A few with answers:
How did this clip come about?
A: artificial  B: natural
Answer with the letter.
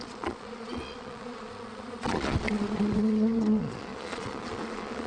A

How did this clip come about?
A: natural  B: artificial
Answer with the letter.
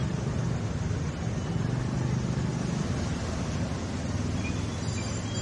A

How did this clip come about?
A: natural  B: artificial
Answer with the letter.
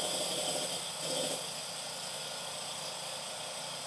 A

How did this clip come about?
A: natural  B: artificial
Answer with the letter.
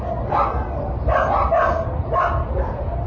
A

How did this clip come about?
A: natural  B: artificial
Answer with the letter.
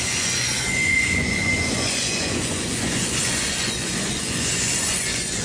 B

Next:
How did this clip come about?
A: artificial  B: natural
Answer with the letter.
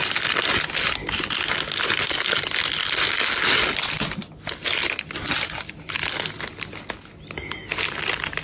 B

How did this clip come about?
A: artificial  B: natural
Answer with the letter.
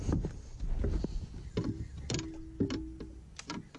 B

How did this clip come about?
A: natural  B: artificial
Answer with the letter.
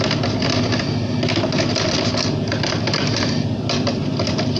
A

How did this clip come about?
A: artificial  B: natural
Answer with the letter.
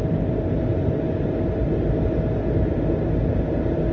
B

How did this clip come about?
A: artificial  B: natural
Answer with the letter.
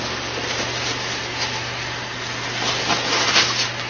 B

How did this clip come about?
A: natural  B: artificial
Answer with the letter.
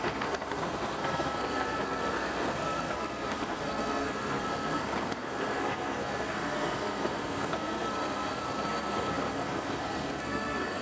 B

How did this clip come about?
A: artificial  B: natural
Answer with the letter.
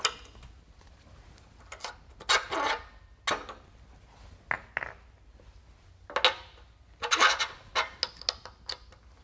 B